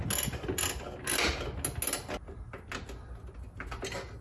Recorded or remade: recorded